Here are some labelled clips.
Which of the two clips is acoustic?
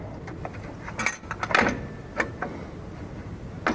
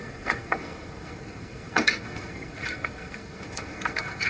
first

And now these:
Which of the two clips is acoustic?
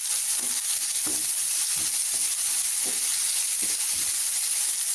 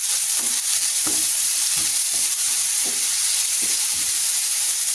first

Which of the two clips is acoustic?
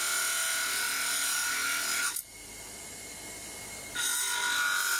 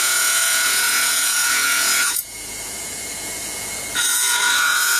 first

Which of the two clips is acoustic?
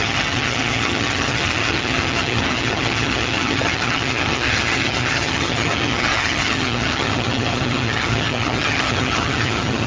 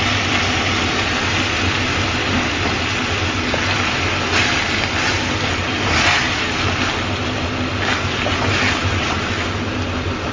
second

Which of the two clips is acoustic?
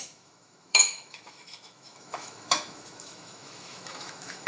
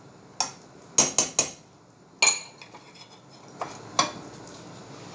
second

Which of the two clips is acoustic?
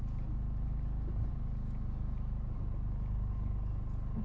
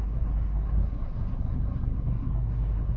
first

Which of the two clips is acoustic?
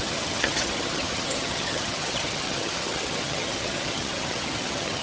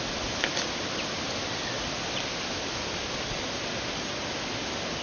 second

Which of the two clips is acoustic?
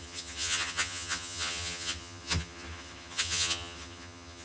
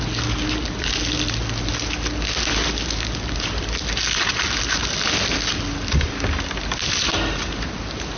second